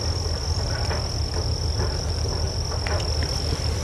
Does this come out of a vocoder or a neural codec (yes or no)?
no